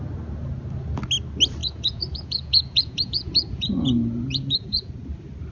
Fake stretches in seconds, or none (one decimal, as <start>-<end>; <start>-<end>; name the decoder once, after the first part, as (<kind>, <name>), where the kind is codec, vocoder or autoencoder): 1.6-4.9 (vocoder, Vocos)